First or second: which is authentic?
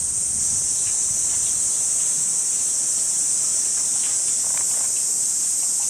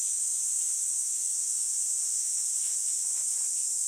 first